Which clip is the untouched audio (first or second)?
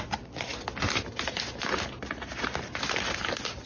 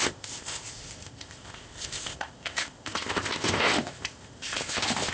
first